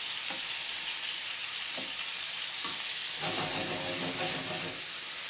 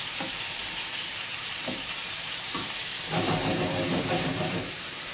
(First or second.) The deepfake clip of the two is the second